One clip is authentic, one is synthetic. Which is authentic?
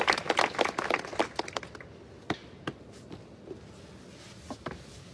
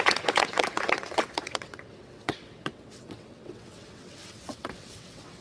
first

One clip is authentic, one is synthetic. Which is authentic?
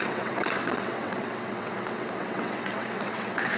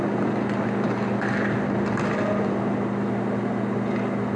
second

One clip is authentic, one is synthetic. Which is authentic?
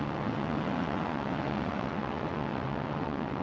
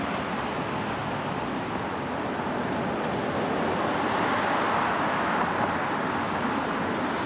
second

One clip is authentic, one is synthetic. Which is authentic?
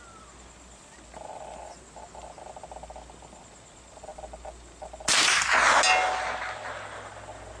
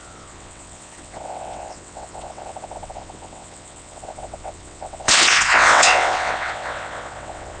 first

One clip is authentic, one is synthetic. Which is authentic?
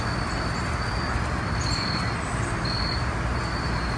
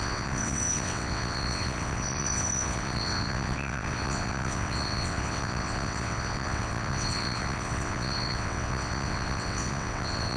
first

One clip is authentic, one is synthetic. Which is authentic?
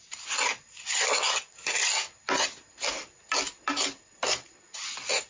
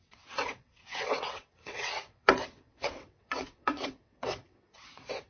first